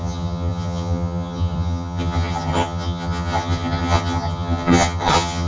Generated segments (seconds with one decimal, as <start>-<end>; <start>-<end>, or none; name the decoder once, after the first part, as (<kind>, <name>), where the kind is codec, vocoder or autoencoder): 0.0-5.5 (vocoder, HiFi-GAN)